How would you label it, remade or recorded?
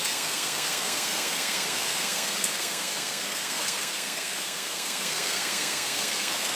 remade